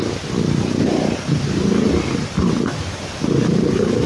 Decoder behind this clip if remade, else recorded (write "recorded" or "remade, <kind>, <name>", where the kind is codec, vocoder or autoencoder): recorded